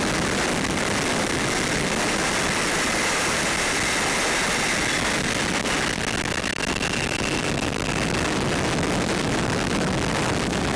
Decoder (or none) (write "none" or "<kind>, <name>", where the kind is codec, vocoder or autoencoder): none